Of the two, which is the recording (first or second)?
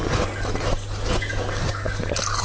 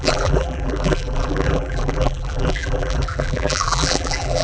first